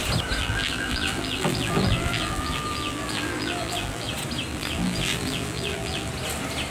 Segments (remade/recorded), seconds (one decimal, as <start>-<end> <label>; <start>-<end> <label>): 0.0-0.4 recorded; 0.4-4.1 remade; 4.1-4.5 recorded; 4.5-6.1 remade; 6.1-6.7 recorded